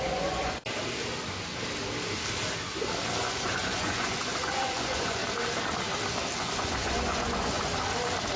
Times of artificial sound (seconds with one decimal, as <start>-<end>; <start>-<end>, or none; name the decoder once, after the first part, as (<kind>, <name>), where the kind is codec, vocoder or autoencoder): 0.0-0.6 (vocoder, Vocos); 3.2-5.2; 6.4-7.7

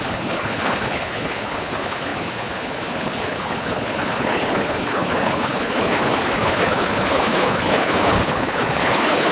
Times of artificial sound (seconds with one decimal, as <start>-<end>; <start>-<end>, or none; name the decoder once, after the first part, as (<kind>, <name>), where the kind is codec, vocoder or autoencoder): 0.0-9.3 (codec, HILCodec)

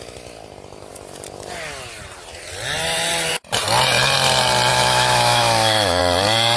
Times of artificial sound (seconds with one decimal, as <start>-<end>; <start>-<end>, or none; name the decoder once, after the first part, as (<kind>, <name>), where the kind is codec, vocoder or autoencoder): 4.7-6.0 (autoencoder, DAC-VAE)

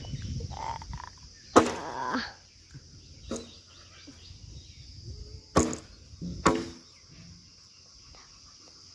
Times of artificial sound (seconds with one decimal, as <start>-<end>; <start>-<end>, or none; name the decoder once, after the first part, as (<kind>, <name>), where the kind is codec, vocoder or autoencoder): none

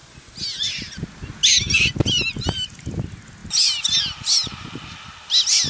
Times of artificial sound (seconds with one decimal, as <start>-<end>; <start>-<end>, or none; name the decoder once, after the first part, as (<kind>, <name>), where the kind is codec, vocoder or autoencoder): none

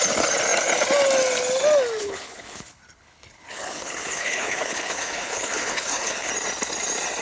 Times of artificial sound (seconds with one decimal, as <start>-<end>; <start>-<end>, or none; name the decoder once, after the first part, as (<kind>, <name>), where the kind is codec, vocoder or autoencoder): 2.0-6.3 (codec, HILCodec)

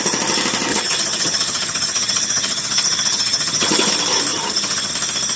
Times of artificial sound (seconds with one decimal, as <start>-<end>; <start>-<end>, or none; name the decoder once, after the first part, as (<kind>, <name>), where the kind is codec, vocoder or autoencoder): 0.7-3.9 (vocoder, HiFi-GAN); 4.3-4.9

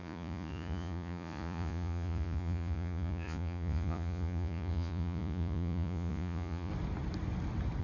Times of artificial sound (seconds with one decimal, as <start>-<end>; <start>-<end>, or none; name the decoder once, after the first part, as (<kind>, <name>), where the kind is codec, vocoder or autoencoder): 0.0-6.7 (vocoder, Vocos)